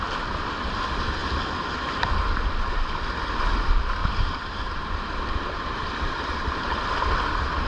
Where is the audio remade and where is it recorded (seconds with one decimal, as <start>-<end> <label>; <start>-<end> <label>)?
0.0-4.0 recorded; 4.0-7.0 remade; 7.0-7.7 recorded